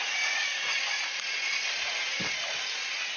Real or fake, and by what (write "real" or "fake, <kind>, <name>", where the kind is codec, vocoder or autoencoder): real